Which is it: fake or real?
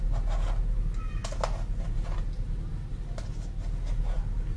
real